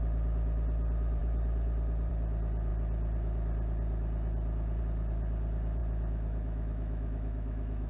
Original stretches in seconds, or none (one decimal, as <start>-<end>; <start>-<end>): 0.0-5.8